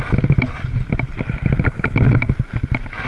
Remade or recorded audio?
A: recorded